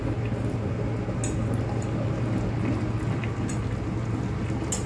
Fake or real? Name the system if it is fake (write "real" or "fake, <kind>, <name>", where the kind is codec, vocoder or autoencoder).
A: real